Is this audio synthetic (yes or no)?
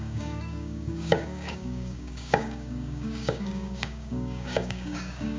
yes